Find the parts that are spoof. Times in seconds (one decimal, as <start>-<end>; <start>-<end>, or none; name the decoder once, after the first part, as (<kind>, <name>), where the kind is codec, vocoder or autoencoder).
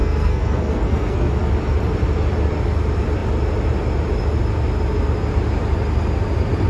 0.0-1.3 (codec, SNAC)